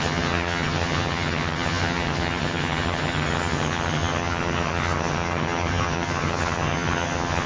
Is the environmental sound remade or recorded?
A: remade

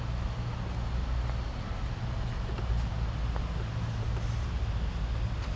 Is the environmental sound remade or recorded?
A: recorded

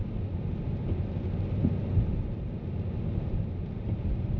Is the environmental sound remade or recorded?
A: recorded